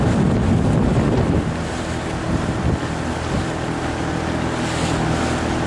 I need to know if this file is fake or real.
real